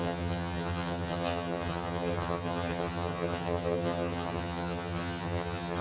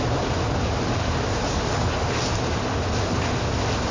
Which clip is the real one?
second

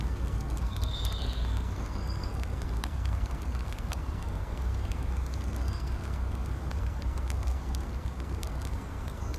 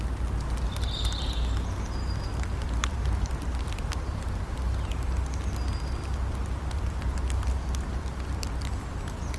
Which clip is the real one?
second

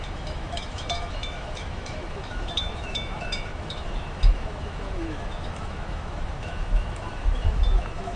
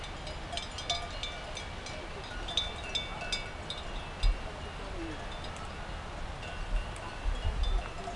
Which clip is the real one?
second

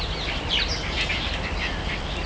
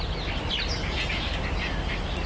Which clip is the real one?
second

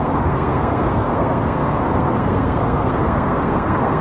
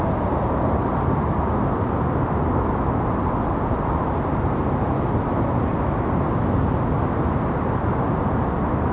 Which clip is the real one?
second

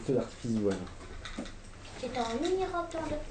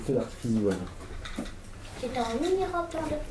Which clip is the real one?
first